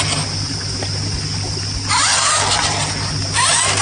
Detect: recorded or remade recorded